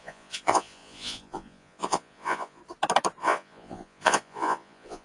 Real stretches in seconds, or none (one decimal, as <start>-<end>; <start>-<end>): 2.6-3.2